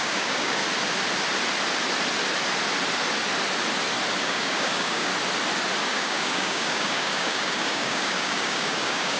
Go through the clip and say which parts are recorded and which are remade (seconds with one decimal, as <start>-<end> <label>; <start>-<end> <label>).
0.0-0.6 remade; 0.6-4.2 recorded; 4.2-5.1 remade; 5.1-5.8 recorded; 5.8-9.2 remade